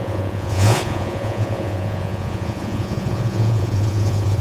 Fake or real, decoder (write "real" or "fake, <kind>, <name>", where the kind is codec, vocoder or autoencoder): fake, vocoder, Vocos